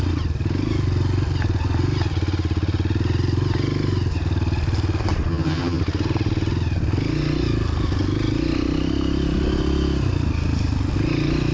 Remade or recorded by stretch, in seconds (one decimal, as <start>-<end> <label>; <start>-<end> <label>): 0.0-5.3 recorded; 5.3-5.8 remade; 5.8-11.5 recorded